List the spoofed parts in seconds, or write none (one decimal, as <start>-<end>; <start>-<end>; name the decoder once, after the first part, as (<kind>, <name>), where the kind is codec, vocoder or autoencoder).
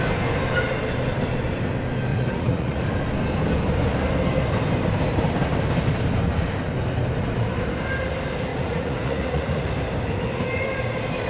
2.1-2.8 (vocoder, Vocos); 8.5-9.7